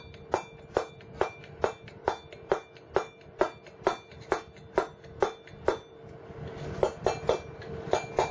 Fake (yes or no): no